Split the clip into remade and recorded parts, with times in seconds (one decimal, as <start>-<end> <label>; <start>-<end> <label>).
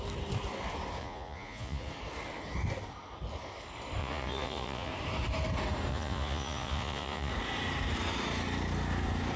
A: 0.0-1.0 recorded; 1.0-1.9 remade; 1.9-4.0 recorded; 4.0-4.9 remade; 4.9-5.9 recorded; 5.9-7.3 remade; 7.3-9.4 recorded